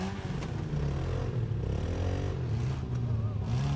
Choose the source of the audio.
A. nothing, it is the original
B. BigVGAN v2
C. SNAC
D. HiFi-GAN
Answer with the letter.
A